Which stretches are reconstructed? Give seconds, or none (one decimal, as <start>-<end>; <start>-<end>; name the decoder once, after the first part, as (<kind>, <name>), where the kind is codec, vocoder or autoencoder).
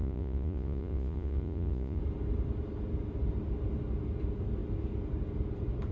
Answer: 0.0-2.0 (vocoder, Vocos)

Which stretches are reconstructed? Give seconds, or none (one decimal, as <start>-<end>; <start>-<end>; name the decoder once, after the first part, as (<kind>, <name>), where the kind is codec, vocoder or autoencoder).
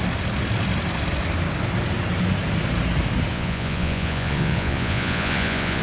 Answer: 3.3-5.8 (vocoder, Vocos)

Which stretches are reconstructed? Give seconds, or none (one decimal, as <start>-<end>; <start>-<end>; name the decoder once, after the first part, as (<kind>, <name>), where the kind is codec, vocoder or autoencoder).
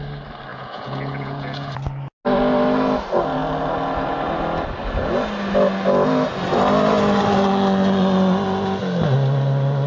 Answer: 0.5-1.7 (vocoder, Vocos)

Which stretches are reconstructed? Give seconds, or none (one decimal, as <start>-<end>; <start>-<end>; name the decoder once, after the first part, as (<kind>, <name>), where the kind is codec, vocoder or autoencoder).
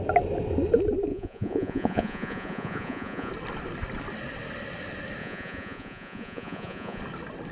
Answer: 1.1-3.3 (vocoder, Vocos); 5.2-7.0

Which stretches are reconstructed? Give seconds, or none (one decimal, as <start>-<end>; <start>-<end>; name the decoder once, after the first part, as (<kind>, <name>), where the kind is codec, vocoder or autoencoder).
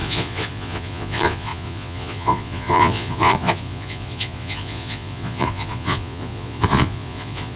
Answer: 0.0-7.6 (vocoder, Vocos)